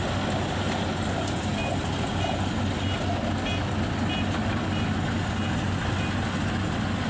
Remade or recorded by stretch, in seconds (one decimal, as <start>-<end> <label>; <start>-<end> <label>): 0.0-7.1 recorded